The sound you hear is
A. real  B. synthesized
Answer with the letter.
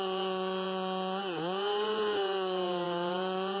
B